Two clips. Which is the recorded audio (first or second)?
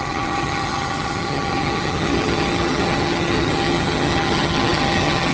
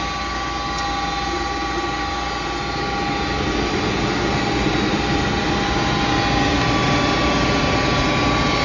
second